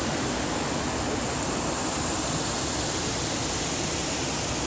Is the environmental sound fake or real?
real